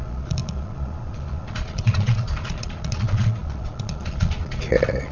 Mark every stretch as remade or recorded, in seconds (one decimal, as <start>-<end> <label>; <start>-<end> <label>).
0.0-5.1 remade